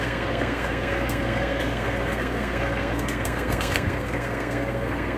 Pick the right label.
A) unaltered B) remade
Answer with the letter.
B